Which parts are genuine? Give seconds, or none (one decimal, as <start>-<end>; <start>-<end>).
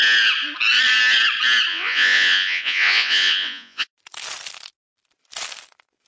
0.0-1.7; 3.9-6.1